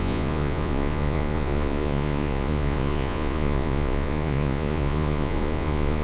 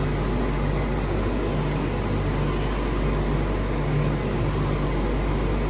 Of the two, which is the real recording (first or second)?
second